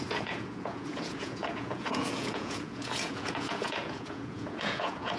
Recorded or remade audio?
remade